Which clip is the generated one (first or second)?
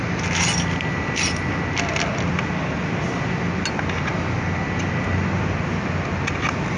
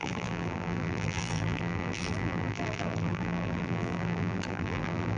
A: second